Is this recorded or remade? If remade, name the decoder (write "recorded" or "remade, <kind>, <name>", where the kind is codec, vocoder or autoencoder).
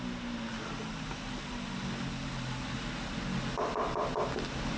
recorded